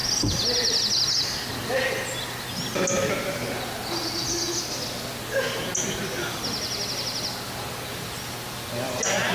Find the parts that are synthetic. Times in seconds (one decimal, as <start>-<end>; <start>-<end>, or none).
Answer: none